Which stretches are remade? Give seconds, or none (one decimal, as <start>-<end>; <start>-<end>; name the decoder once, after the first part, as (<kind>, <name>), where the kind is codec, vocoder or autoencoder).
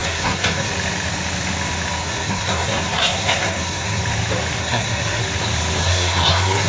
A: 0.0-0.7 (codec, SNAC); 2.0-4.0; 4.6-5.2; 5.8-6.7